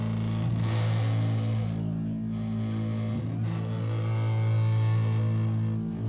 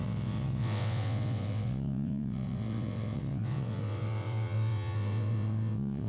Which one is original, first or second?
first